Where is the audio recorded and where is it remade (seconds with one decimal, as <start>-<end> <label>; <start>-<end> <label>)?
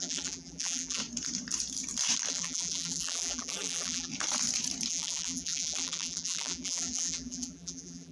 0.0-1.0 remade; 1.0-2.3 recorded; 2.3-4.1 remade; 4.1-4.9 recorded; 4.9-8.1 remade